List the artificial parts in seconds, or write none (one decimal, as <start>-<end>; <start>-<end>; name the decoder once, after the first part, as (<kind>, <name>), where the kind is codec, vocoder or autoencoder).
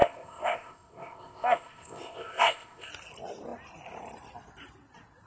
0.0-2.9 (codec, ZipCodec)